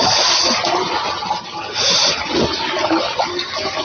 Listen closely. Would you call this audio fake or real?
real